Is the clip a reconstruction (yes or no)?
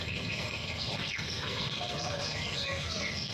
yes